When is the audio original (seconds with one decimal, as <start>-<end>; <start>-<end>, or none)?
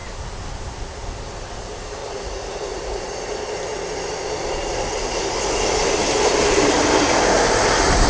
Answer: 0.0-2.0; 3.0-8.1